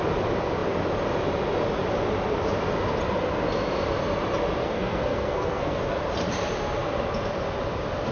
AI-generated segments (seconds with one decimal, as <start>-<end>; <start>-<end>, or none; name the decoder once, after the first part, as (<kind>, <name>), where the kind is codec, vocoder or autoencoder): 4.6-5.8 (codec, SNAC)